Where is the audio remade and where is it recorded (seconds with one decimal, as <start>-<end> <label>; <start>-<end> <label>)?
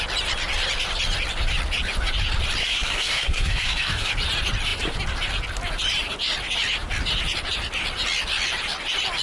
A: 0.0-2.6 recorded; 2.6-4.1 remade; 4.1-9.2 recorded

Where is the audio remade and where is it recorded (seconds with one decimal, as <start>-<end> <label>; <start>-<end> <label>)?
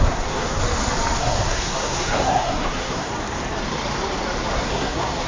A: 0.0-0.6 remade; 0.6-1.2 recorded; 1.2-3.1 remade; 3.1-4.5 recorded; 4.5-5.3 remade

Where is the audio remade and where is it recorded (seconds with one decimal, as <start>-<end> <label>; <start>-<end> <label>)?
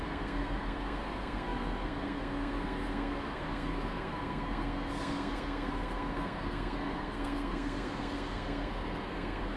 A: 0.0-9.6 remade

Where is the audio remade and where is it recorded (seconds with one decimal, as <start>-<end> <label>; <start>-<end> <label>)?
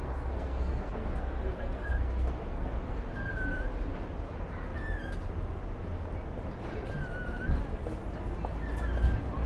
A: 0.0-3.4 remade; 3.4-9.5 recorded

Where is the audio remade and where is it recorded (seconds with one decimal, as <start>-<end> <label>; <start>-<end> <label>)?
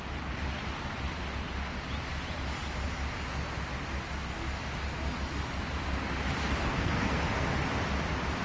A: 0.0-6.4 recorded; 6.4-7.5 remade; 7.5-8.4 recorded